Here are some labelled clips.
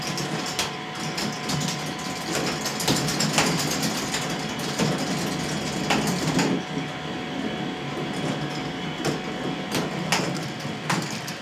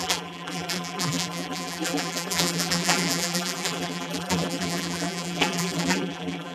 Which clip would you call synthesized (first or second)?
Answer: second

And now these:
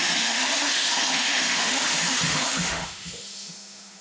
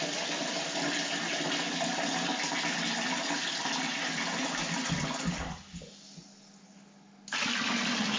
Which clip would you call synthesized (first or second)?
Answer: first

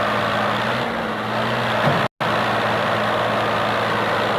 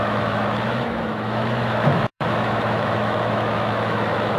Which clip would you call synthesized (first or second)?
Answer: second